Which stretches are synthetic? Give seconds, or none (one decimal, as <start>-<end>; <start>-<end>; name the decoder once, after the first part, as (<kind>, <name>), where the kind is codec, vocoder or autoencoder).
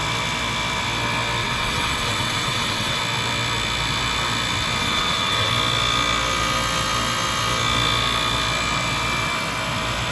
1.4-3.0 (vocoder, WaveNeXt); 4.8-5.5